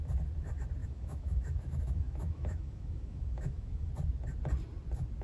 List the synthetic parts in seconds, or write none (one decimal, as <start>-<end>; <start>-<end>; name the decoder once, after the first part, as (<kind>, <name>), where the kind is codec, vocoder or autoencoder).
0.8-3.9 (autoencoder, DAC-VAE)